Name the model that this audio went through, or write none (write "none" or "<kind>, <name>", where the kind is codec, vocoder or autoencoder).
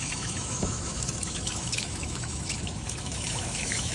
autoencoder, DAC-VAE